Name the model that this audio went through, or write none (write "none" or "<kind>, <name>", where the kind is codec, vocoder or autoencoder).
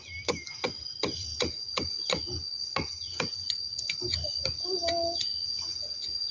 none